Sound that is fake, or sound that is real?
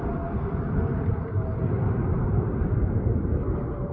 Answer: real